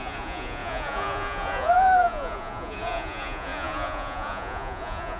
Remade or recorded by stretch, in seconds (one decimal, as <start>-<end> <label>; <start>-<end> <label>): 0.0-5.2 remade